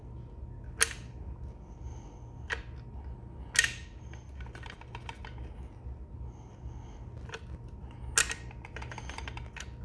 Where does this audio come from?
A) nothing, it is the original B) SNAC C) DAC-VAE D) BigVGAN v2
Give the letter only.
A